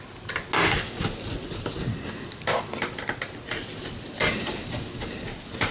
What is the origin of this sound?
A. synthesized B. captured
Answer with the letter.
B